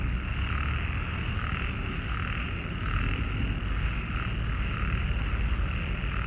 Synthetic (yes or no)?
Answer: no